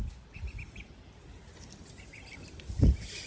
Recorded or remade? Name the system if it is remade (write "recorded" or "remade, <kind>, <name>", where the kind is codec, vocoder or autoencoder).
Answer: recorded